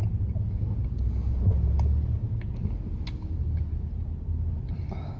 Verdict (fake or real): real